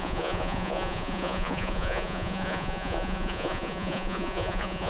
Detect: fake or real fake